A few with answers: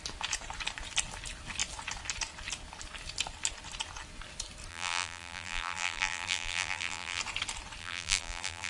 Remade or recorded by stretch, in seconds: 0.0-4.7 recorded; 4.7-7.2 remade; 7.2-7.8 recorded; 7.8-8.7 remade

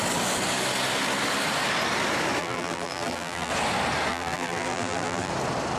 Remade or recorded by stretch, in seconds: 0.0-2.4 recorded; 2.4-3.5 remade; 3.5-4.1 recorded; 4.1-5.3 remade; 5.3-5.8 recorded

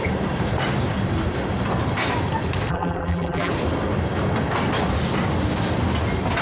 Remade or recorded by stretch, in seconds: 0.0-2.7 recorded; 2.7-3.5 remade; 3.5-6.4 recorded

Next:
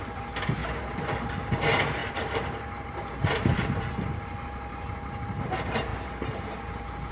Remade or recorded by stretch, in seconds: 0.0-0.6 remade; 0.6-1.6 recorded; 1.6-7.1 remade